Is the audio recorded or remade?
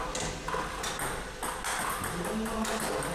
recorded